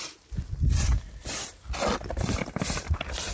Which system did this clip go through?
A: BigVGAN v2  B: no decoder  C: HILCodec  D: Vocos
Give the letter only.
B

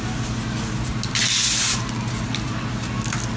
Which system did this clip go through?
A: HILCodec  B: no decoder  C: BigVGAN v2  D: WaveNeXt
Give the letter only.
B